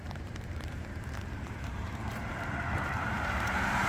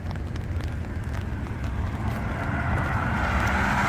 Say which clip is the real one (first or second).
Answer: second